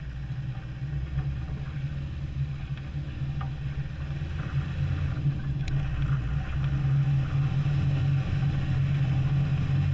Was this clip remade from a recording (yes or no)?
no